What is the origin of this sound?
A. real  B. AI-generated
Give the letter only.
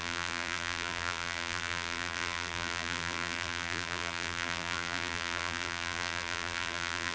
B